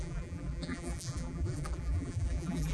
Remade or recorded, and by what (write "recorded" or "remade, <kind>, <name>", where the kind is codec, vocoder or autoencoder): remade, vocoder, BigVGAN v2